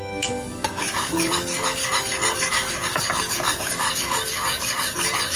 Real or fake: fake